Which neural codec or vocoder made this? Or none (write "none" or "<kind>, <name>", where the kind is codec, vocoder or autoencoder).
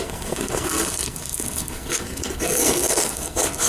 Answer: codec, SNAC